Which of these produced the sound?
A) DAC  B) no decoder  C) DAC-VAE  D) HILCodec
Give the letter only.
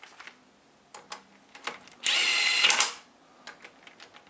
B